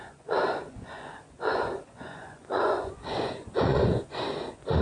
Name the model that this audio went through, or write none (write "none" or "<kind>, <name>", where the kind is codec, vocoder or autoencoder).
vocoder, Vocos